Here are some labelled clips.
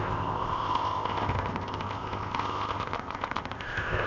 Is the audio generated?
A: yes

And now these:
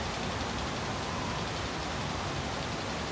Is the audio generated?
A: no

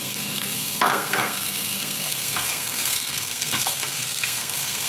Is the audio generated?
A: yes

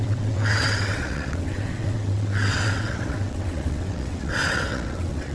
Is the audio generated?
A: yes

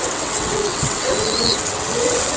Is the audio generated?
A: yes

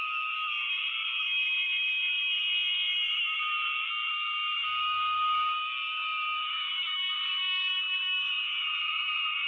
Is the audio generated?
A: yes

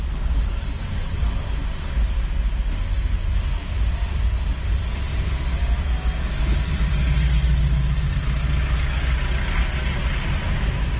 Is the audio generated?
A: no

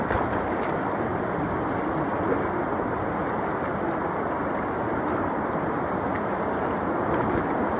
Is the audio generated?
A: no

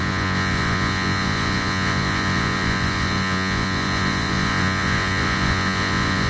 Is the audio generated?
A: yes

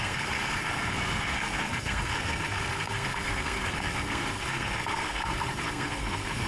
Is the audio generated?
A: yes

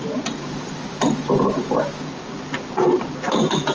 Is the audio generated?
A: no